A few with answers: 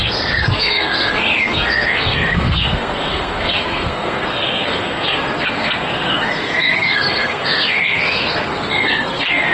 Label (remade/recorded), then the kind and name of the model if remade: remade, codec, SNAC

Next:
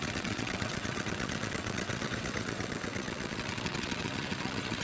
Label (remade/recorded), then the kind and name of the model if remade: remade, vocoder, WaveNeXt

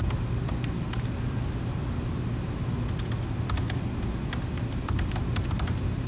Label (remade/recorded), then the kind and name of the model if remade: recorded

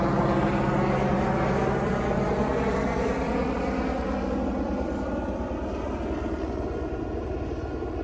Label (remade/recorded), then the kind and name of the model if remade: recorded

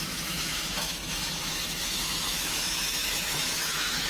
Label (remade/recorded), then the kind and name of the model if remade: remade, autoencoder, DAC-VAE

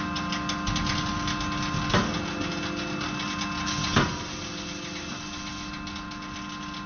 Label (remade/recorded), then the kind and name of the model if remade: recorded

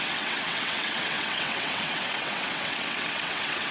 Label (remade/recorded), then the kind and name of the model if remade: remade, vocoder, WaveNeXt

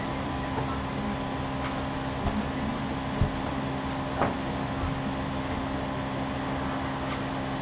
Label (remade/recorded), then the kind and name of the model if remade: recorded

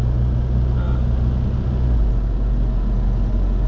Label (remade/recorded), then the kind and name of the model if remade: recorded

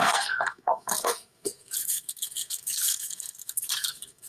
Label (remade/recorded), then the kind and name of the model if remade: remade, codec, SNAC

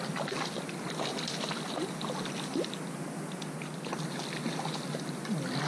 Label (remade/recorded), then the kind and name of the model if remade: recorded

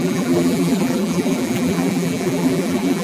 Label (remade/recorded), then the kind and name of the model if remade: remade, vocoder, BigVGAN v2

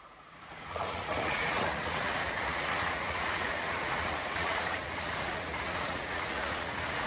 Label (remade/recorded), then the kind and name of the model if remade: remade, vocoder, Vocos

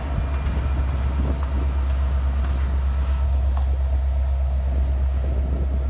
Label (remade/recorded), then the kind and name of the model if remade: recorded